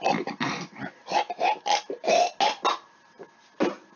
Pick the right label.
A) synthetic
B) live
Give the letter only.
B